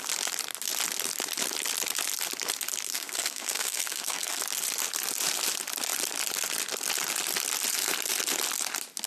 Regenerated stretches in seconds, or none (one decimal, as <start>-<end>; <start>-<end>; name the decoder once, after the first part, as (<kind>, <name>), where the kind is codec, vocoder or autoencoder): 2.9-4.4 (codec, SNAC)